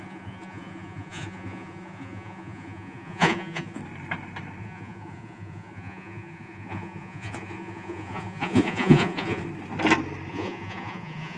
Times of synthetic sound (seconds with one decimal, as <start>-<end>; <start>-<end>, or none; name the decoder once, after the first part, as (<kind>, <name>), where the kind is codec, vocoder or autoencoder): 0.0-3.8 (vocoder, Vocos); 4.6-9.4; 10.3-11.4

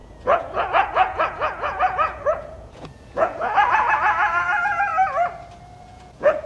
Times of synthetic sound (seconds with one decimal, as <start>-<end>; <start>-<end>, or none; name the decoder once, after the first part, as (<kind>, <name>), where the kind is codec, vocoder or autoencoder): 0.0-4.9 (vocoder, Vocos); 5.8-6.5

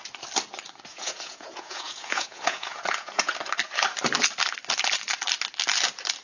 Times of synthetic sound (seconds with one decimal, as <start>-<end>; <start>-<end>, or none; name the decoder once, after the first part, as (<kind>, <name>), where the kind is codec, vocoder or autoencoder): 0.9-3.3 (vocoder, Vocos)

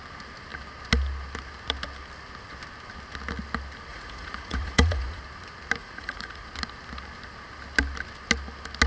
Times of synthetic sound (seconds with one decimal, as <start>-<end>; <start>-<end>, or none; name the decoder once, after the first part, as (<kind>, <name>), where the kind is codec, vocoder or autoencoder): 3.9-5.2 (vocoder, Vocos); 5.8-6.5